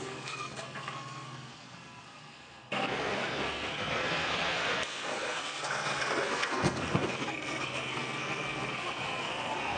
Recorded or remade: remade